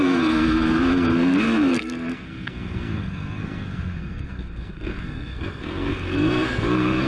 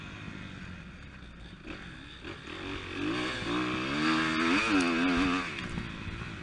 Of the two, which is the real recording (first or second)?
second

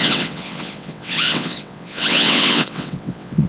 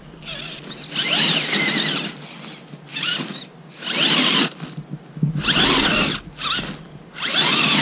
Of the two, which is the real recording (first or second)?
second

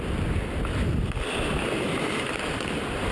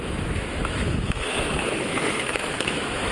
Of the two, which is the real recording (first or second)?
first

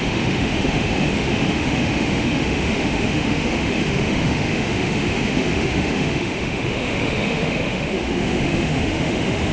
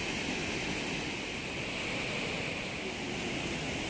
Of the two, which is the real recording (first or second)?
second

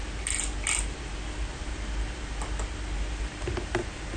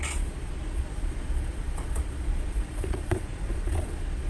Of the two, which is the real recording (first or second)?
first